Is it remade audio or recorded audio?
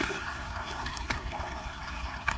remade